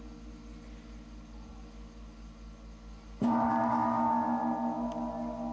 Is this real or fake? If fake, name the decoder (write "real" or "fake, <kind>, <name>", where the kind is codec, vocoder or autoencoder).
real